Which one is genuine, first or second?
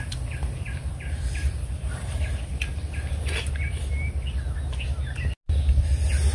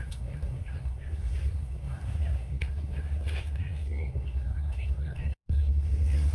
first